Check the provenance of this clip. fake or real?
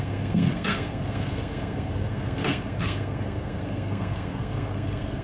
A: fake